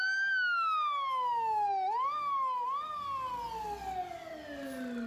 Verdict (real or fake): real